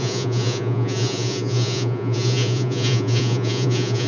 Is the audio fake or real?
fake